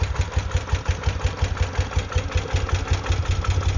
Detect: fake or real real